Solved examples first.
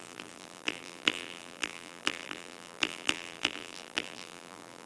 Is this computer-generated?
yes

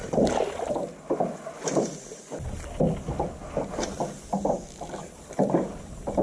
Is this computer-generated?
no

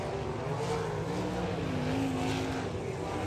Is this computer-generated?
no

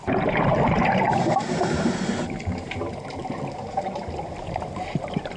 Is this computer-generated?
yes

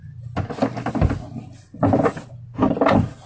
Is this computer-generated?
no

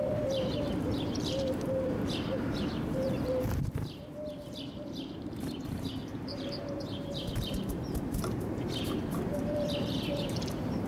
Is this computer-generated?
yes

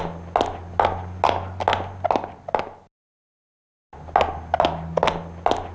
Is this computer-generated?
no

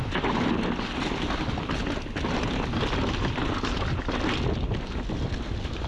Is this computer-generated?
no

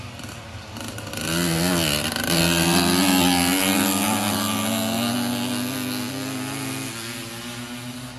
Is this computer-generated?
no